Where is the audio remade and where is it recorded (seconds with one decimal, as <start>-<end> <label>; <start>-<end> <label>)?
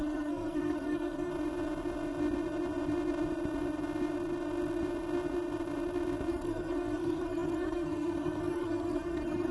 0.0-1.3 remade; 1.3-6.3 recorded; 6.3-9.5 remade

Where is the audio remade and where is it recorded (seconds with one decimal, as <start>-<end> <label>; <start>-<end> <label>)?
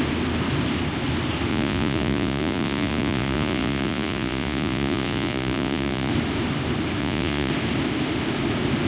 0.0-1.5 recorded; 1.5-6.1 remade; 6.1-7.0 recorded; 7.0-7.5 remade; 7.5-8.9 recorded